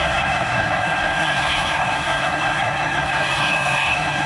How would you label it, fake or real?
fake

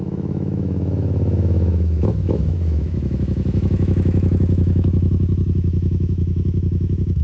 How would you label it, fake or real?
fake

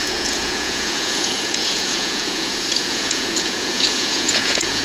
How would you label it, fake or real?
fake